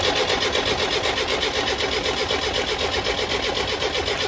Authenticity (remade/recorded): recorded